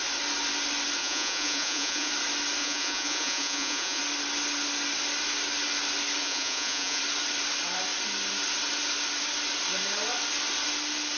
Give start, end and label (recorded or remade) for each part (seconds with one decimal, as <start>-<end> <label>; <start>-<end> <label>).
0.0-1.0 recorded; 1.0-2.1 remade; 2.1-2.6 recorded; 2.6-4.0 remade; 4.0-6.2 recorded; 6.2-7.0 remade; 7.0-11.2 recorded